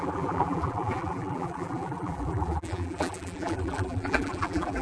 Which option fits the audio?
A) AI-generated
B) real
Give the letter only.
A